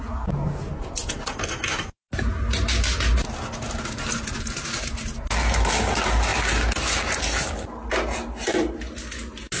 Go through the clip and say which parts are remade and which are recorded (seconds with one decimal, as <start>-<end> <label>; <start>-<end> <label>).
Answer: 0.0-9.6 recorded